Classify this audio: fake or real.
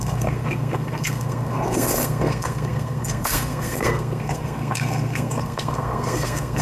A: fake